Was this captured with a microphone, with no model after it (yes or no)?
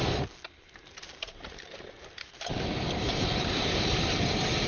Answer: no